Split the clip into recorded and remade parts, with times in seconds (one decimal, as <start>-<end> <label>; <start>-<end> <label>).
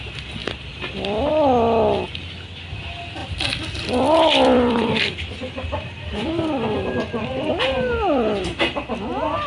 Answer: 0.0-0.4 recorded; 0.4-1.3 remade; 1.3-3.2 recorded; 3.2-7.5 remade; 7.5-9.5 recorded